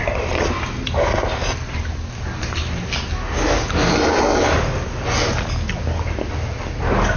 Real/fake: real